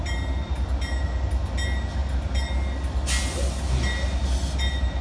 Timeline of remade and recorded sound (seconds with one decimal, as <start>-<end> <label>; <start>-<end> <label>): 0.0-5.0 recorded